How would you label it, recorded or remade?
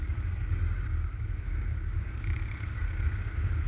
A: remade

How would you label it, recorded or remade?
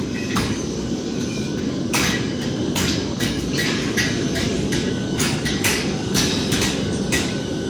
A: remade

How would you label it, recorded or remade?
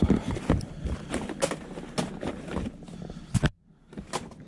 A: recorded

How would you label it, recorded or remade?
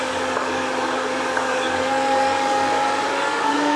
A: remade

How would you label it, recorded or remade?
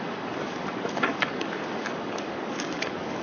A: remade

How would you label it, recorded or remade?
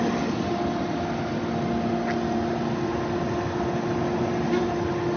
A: recorded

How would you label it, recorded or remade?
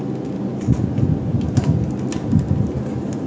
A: recorded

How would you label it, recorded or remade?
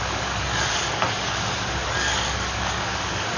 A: remade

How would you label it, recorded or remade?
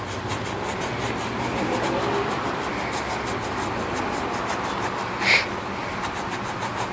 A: recorded